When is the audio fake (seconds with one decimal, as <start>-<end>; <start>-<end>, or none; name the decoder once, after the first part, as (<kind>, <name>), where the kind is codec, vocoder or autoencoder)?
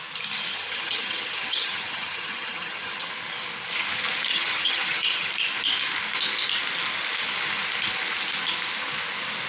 0.5-3.1 (vocoder, HiFi-GAN); 4.3-5.3